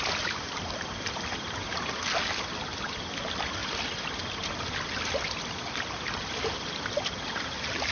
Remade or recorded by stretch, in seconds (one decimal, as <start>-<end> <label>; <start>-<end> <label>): 0.0-7.9 recorded